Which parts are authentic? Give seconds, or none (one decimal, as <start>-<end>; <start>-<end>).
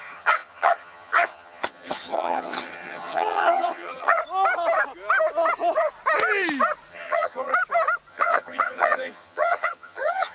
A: 4.2-6.9; 7.5-8.1